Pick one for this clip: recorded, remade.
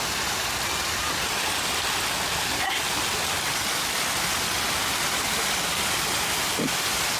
recorded